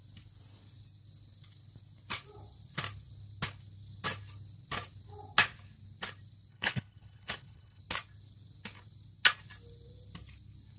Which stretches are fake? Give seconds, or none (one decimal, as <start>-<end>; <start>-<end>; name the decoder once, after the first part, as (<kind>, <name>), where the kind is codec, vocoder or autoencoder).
6.5-7.8 (codec, HILCodec)